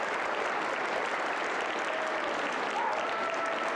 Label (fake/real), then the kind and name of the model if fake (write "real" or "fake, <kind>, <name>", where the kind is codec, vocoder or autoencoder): real